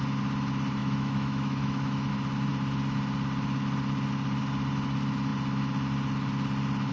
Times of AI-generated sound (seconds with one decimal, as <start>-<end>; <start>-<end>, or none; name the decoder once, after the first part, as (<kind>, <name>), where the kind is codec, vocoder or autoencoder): 0.8-2.1 (autoencoder, DAC-VAE)